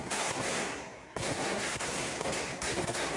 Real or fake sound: fake